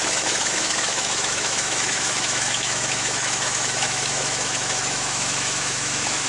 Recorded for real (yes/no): no